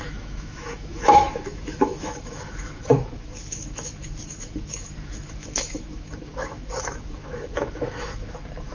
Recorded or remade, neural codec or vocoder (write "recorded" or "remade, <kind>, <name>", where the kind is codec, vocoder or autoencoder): remade, autoencoder, DAC-VAE